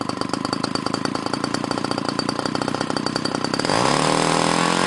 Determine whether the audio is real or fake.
real